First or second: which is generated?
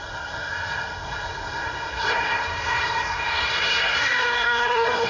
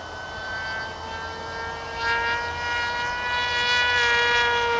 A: first